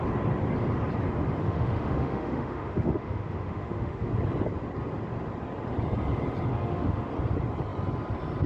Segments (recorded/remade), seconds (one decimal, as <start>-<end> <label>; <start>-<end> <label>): 0.0-1.4 recorded; 1.4-4.1 remade; 4.1-6.5 recorded; 6.5-7.1 remade; 7.1-8.5 recorded